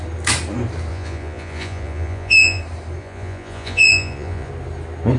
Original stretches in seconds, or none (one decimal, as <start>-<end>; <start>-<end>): 0.0-0.9; 2.6-3.0; 4.5-5.2